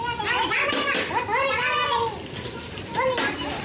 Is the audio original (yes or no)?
yes